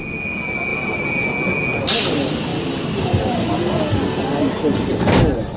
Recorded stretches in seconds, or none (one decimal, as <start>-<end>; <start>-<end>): 0.0-0.7; 1.3-2.5; 4.4-4.9